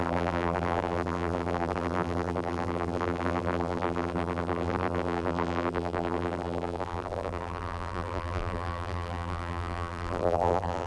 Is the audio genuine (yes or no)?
no